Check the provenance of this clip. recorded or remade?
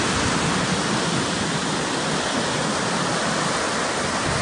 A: recorded